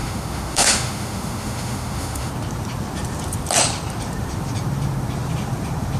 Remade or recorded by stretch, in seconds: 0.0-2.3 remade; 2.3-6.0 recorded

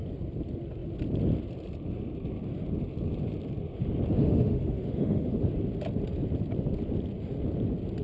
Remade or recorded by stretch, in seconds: 0.0-4.2 recorded; 4.2-5.4 remade; 5.4-8.0 recorded

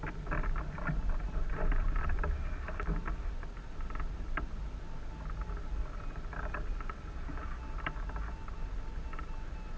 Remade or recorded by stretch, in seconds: 0.0-9.8 recorded

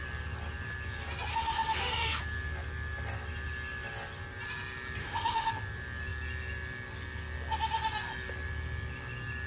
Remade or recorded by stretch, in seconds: 0.0-1.3 recorded; 1.3-2.2 remade; 2.2-5.0 recorded; 5.0-5.5 remade; 5.5-9.5 recorded